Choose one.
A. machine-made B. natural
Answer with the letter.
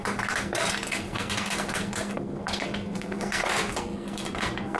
A